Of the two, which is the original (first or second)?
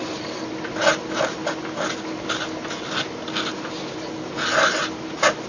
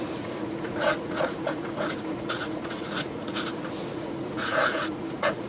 first